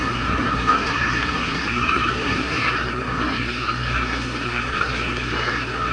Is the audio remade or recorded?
remade